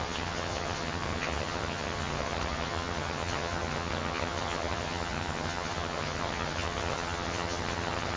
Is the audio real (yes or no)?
no